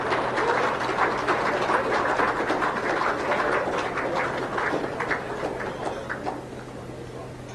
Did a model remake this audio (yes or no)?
no